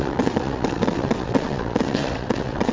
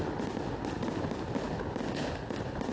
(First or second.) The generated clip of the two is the first